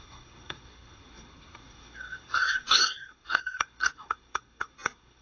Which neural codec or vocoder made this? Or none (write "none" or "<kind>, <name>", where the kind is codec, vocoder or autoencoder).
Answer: codec, SNAC